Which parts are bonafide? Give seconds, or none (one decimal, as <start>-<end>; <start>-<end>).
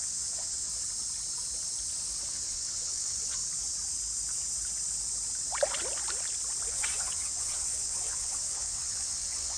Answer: 0.7-2.3; 3.4-6.7